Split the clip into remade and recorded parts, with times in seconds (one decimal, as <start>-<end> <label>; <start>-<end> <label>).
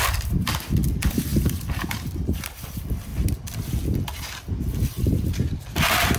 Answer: 0.0-3.1 remade; 3.1-4.5 recorded; 4.5-6.2 remade